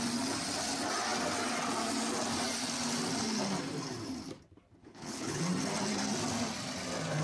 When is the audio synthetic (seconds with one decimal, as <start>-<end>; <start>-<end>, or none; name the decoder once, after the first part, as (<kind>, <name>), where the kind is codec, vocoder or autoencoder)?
4.8-5.4 (codec, HILCodec)